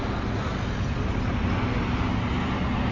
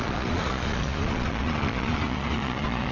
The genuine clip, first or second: first